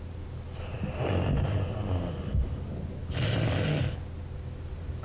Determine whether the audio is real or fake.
real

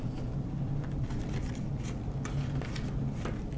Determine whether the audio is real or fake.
real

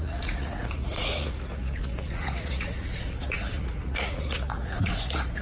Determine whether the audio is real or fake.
fake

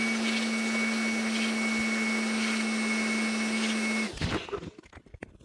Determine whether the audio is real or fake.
real